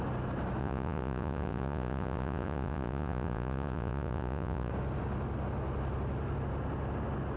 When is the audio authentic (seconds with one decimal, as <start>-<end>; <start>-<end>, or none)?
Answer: 0.0-0.6; 4.7-7.4